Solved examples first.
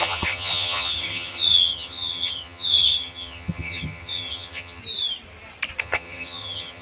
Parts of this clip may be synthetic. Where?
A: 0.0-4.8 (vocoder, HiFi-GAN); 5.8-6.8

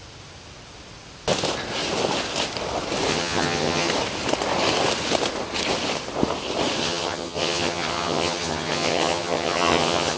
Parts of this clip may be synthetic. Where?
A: 3.1-3.9 (vocoder, HiFi-GAN); 6.8-10.2

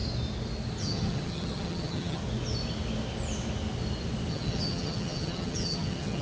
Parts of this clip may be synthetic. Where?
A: 0.8-2.2 (vocoder, HiFi-GAN); 4.3-6.2

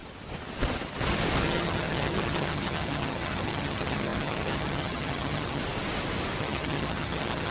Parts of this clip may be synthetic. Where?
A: 1.4-5.6 (vocoder, HiFi-GAN); 6.4-7.5